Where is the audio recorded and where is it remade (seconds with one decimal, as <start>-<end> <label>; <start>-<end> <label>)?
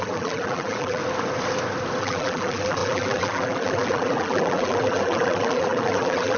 0.0-1.0 remade; 1.0-2.0 recorded; 2.0-6.4 remade